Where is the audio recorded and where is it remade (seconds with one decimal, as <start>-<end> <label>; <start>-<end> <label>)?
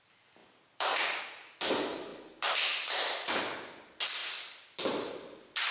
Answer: 0.0-0.4 recorded; 0.4-1.2 remade; 1.2-5.7 recorded